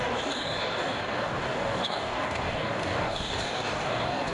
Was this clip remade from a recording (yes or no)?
yes